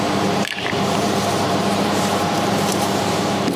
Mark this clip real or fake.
fake